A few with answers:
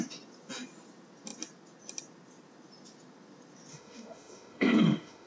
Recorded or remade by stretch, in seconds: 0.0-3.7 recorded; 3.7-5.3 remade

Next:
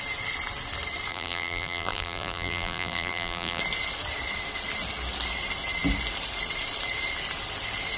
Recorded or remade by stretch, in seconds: 0.0-1.1 recorded; 1.1-3.6 remade; 3.6-8.0 recorded